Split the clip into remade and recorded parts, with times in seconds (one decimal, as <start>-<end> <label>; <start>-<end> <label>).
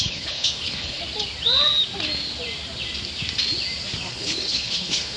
0.0-1.0 remade; 1.0-4.1 recorded; 4.1-5.2 remade